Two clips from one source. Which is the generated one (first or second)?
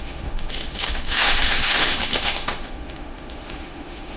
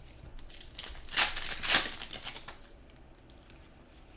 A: first